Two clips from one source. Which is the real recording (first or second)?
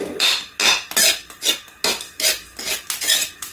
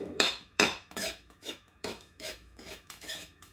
first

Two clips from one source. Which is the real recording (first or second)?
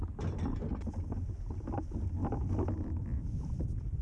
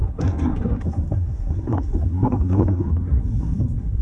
first